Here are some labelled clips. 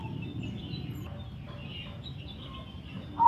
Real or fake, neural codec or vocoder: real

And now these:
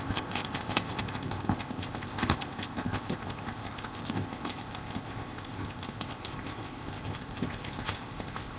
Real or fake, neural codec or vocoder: fake, codec, ZipCodec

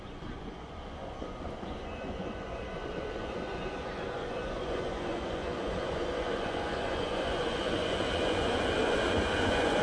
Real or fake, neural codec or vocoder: fake, vocoder, Vocos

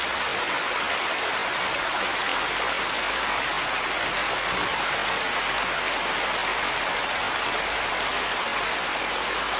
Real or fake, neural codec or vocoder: real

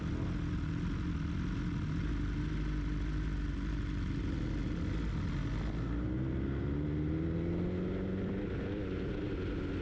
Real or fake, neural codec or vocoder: real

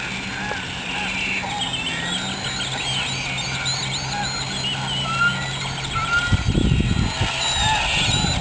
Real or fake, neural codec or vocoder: real